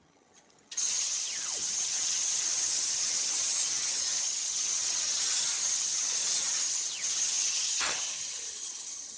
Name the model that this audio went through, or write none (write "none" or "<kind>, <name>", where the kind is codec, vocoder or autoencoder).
vocoder, HiFi-GAN